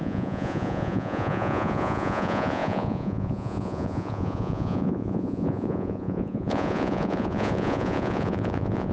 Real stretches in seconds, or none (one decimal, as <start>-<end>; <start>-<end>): none